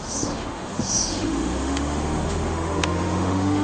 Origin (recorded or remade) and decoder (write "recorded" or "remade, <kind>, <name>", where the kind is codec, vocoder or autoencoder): remade, autoencoder, DAC-VAE